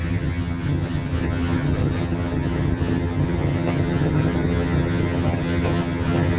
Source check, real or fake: fake